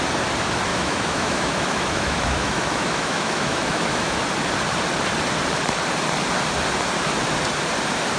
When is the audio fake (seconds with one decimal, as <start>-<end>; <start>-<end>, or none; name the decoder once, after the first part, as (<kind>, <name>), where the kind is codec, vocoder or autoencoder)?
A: 0.7-4.2 (autoencoder, DAC-VAE)